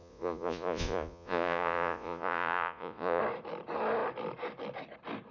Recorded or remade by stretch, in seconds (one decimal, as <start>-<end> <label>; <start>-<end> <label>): 0.0-3.2 remade; 3.2-5.3 recorded